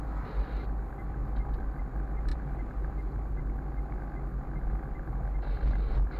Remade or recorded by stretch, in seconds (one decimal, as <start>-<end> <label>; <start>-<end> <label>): 0.0-6.2 recorded